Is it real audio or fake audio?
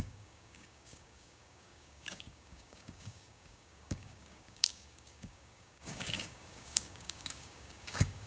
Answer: fake